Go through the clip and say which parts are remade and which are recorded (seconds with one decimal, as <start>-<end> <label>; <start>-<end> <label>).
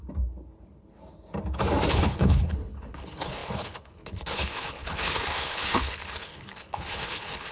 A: 0.0-1.9 recorded; 1.9-7.5 remade